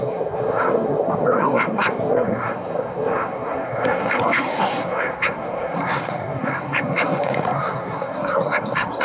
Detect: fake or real fake